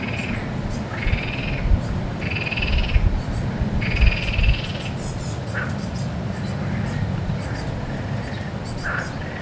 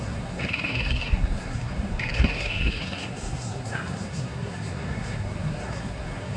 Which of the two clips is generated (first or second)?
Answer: second